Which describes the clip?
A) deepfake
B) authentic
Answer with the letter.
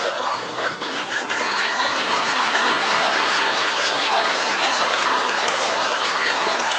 A